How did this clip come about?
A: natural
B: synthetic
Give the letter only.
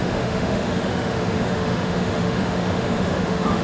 B